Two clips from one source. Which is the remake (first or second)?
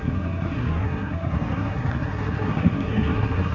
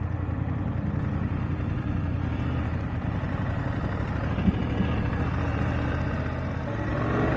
first